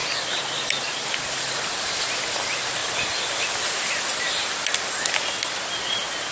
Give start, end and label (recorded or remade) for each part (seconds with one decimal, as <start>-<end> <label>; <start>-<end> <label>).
0.0-2.1 remade; 2.1-2.8 recorded; 2.8-4.4 remade; 4.4-6.3 recorded